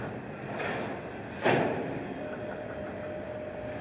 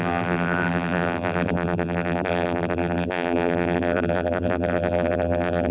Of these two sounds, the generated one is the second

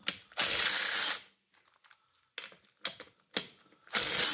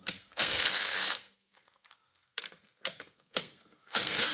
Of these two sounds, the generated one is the second